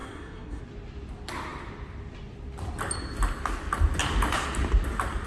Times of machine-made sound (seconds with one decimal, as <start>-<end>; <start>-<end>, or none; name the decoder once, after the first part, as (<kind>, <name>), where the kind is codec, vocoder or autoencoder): 0.0-0.6 (codec, SNAC)